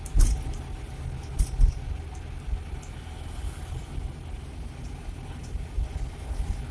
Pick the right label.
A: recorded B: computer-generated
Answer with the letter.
A